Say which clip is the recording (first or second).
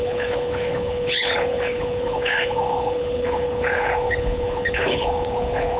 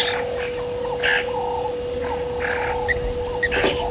second